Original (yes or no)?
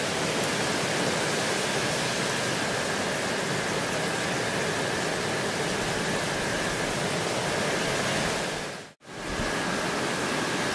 yes